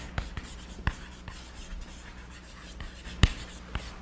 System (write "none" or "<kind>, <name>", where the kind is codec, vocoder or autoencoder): none